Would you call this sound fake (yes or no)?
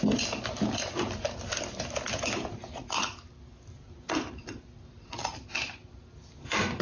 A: no